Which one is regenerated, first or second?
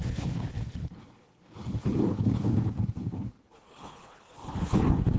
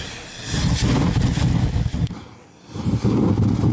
first